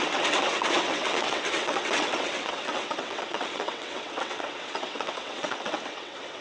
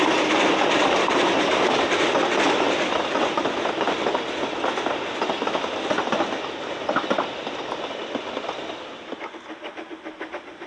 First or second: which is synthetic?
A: first